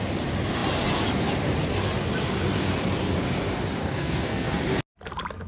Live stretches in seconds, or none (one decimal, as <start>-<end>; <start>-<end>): 0.0-3.8; 4.6-5.5